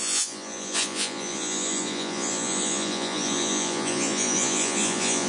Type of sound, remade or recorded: remade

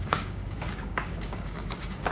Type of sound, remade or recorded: remade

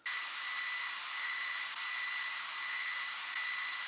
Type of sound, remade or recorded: recorded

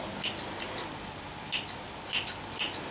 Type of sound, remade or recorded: recorded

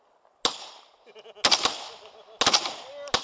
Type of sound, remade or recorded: recorded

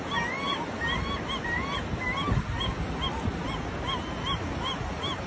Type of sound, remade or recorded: recorded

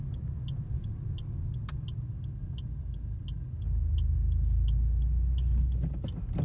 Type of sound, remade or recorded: recorded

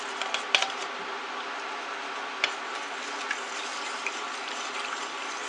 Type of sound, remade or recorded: recorded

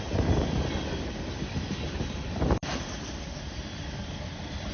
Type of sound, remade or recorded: remade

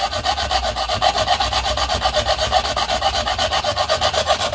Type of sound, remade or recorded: recorded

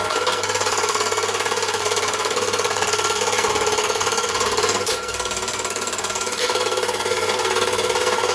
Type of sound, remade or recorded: remade